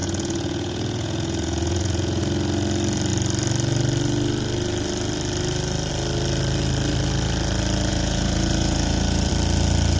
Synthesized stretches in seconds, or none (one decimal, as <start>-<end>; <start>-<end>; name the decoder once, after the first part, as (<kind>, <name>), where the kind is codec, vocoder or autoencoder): 0.0-2.2 (vocoder, Vocos); 7.9-9.3